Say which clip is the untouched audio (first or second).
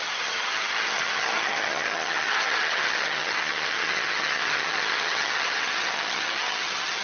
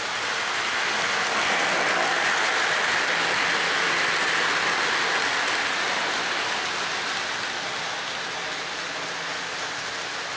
second